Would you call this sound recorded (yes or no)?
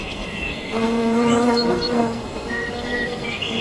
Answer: no